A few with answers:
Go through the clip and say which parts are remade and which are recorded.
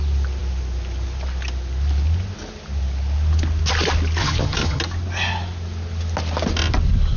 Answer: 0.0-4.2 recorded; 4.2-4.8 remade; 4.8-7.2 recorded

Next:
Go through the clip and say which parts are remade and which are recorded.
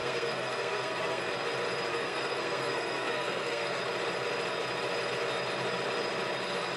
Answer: 0.0-1.3 remade; 1.3-1.9 recorded; 1.9-3.8 remade; 3.8-6.8 recorded